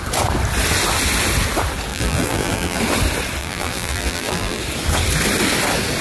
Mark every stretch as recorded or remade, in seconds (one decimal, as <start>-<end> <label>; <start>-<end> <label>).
0.0-1.9 recorded; 1.9-2.8 remade; 2.8-3.4 recorded; 3.4-4.6 remade; 4.6-6.0 recorded